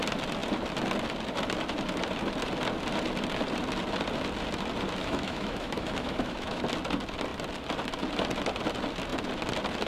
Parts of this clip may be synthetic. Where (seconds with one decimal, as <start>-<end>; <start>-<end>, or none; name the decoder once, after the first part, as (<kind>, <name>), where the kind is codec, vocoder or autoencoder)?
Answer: 5.0-6.6 (autoencoder, DAC-VAE)

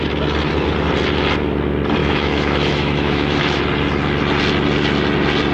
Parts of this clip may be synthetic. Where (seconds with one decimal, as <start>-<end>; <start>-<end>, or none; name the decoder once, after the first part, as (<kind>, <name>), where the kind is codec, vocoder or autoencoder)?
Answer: 2.0-3.6 (autoencoder, DAC-VAE)

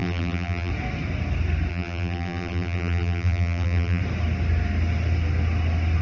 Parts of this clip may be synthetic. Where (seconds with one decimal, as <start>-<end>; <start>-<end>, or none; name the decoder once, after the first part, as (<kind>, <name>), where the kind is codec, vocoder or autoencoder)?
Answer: 0.0-0.7 (vocoder, BigVGAN v2); 1.7-4.0

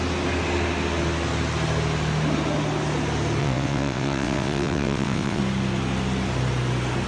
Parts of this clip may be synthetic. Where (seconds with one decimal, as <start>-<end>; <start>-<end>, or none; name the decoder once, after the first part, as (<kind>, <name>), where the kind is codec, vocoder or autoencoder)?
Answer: 3.4-5.4 (vocoder, WaveNeXt)

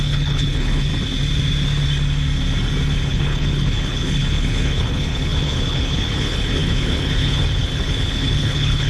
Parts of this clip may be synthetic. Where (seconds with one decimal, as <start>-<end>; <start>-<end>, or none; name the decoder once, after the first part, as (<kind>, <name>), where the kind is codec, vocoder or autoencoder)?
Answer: 0.0-0.9 (codec, HILCodec); 3.1-8.9

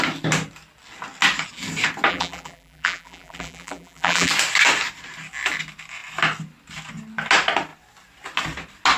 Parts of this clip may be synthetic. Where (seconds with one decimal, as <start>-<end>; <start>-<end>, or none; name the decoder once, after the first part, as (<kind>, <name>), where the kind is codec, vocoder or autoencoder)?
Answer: 2.1-4.3 (vocoder, BigVGAN v2)

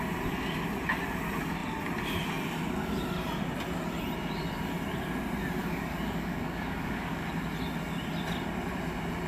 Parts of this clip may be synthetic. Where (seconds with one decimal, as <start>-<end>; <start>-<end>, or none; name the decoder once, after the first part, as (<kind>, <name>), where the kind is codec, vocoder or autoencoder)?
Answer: 5.6-7.3 (codec, DAC)